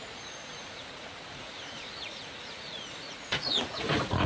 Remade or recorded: remade